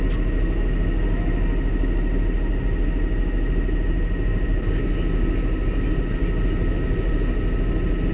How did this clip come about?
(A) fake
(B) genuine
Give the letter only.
B